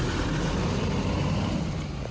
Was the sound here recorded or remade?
recorded